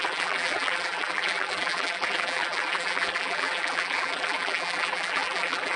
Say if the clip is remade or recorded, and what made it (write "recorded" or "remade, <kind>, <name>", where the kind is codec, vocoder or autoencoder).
remade, vocoder, BigVGAN v2